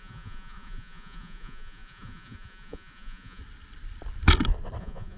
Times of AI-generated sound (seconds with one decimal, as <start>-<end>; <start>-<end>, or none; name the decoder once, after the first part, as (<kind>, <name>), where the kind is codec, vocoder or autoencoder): 0.0-3.4 (vocoder, Vocos); 4.8-5.2

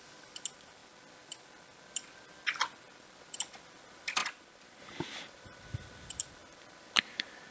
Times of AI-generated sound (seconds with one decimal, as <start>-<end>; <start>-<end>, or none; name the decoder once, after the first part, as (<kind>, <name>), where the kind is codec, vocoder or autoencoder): none

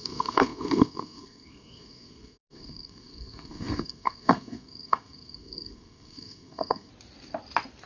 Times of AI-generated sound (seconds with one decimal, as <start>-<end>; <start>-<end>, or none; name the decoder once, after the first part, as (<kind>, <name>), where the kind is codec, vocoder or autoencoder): 0.0-6.9 (codec, SNAC)

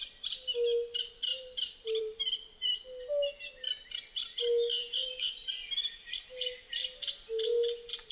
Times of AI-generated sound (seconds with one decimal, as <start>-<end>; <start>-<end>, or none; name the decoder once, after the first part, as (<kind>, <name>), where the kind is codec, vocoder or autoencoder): 1.3-2.0 (vocoder, BigVGAN v2); 4.8-5.5

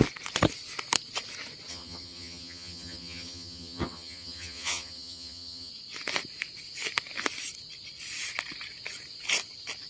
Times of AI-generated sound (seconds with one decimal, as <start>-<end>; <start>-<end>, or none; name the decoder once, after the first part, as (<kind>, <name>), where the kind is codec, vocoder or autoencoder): 1.7-5.7 (vocoder, HiFi-GAN)